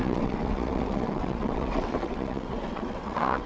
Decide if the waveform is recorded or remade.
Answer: remade